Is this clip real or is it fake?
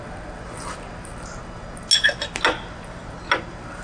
real